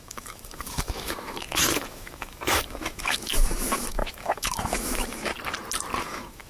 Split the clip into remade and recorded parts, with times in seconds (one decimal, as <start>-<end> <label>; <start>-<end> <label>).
0.0-5.3 remade; 5.3-6.0 recorded; 6.0-6.5 remade